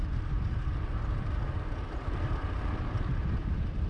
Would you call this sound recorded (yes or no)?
no